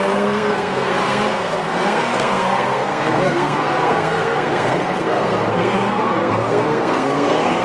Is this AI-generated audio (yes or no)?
yes